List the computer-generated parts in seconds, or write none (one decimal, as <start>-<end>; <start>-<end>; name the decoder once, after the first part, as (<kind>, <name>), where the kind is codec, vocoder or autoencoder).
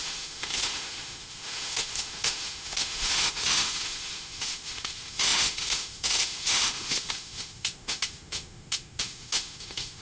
0.0-10.0 (autoencoder, DAC-VAE)